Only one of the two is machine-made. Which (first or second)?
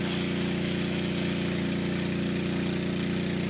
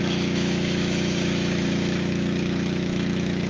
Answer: second